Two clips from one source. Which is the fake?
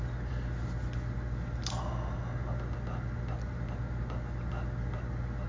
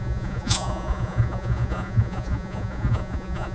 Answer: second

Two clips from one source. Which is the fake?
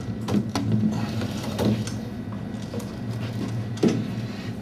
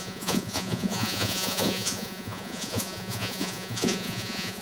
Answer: second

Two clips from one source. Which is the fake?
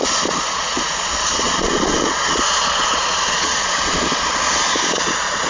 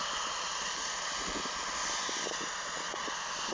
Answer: first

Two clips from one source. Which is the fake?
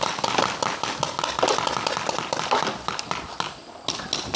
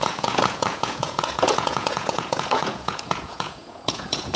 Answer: second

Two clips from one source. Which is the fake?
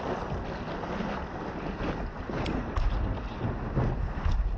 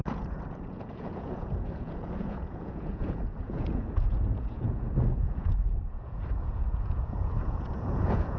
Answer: second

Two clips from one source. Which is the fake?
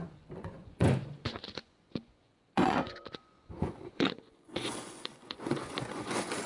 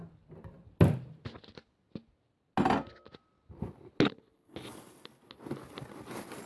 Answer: first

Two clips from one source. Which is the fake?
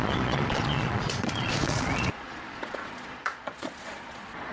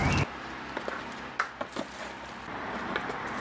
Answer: first